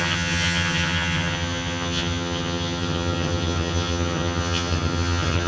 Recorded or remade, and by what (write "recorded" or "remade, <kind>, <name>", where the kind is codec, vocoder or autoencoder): remade, vocoder, HiFi-GAN